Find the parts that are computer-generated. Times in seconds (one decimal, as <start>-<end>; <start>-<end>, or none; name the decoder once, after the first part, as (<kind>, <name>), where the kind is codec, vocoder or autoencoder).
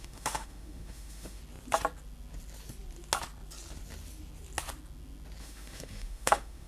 0.0-1.4 (autoencoder, DAC-VAE); 5.4-6.7